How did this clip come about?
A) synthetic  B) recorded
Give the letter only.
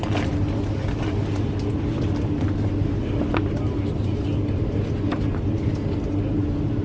B